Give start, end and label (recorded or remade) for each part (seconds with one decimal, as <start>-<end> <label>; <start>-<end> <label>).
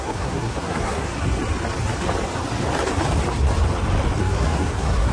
0.0-1.1 remade; 1.1-4.2 recorded; 4.2-5.1 remade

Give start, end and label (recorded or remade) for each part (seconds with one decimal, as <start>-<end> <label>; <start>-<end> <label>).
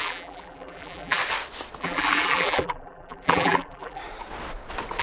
0.0-1.2 remade; 1.2-1.8 recorded; 1.8-4.0 remade; 4.0-5.0 recorded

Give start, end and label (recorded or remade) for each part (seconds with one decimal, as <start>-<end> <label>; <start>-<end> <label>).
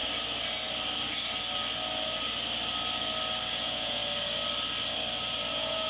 0.0-3.5 recorded; 3.5-4.0 remade; 4.0-5.5 recorded; 5.5-5.9 remade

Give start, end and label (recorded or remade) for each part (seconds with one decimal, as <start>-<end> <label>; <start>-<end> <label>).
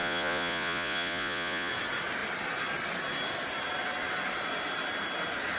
0.0-1.7 remade; 1.7-5.6 recorded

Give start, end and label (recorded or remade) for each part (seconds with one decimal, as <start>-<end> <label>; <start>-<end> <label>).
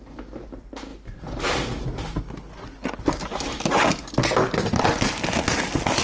0.0-6.0 recorded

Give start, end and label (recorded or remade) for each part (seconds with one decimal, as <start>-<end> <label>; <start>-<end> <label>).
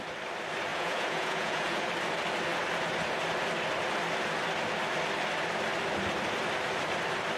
0.0-0.7 recorded; 0.7-1.9 remade; 1.9-7.4 recorded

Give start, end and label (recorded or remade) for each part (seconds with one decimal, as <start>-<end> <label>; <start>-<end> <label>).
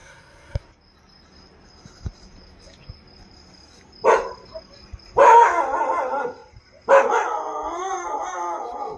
0.0-0.6 remade; 0.6-9.0 recorded